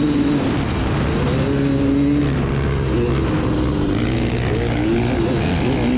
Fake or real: real